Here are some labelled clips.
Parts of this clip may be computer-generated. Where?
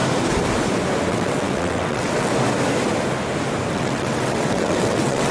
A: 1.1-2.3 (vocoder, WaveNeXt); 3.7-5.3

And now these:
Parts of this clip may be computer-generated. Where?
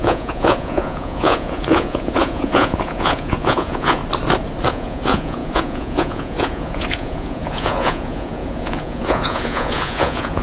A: 0.0-4.0 (vocoder, Vocos); 4.7-10.4